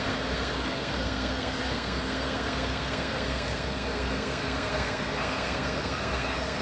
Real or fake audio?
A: fake